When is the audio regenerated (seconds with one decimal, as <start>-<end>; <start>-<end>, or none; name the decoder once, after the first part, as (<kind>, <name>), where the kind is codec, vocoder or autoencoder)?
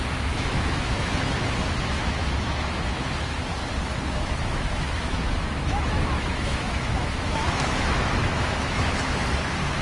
0.0-3.4 (autoencoder, DAC-VAE); 4.1-9.8